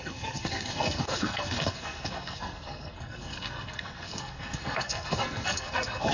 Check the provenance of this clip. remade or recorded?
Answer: remade